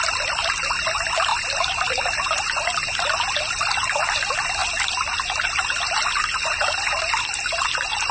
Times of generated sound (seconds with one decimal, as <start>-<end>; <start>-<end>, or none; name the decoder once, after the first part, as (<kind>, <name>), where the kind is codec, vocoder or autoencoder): none